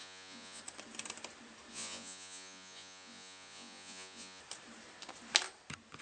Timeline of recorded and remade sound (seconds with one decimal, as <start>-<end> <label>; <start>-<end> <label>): 0.0-0.6 remade; 0.6-1.7 recorded; 1.7-4.4 remade; 4.4-6.0 recorded